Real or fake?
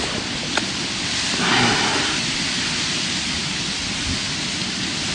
real